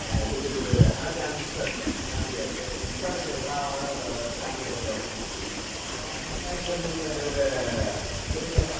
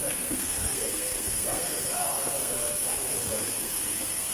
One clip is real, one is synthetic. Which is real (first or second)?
first